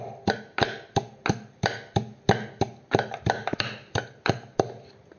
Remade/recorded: recorded